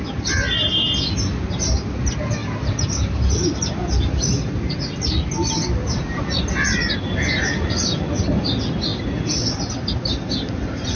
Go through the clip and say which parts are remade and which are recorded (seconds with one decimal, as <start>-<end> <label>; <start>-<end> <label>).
0.0-11.0 recorded